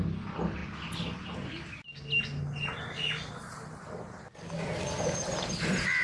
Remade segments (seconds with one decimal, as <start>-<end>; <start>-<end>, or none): none

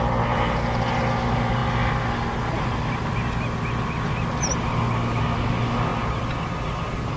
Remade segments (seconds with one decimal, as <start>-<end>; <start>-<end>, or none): none

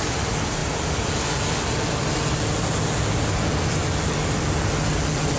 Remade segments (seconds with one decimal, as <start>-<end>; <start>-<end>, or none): none

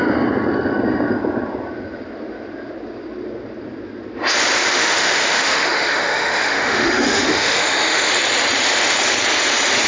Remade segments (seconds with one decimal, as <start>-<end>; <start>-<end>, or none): 4.7-8.1

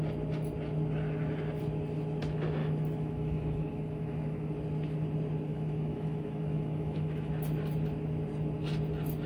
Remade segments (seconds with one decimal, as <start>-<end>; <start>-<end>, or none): 2.6-4.5; 5.5-7.3

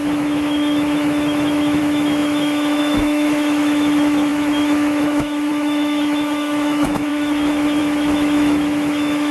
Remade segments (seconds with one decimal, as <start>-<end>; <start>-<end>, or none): 0.0-9.3

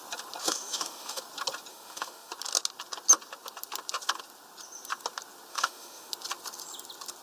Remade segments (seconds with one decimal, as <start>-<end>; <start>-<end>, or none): 0.4-1.2; 1.7-2.3; 5.5-6.1

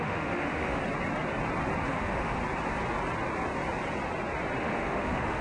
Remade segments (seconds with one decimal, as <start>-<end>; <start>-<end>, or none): 0.0-0.8; 1.9-2.4; 4.6-5.4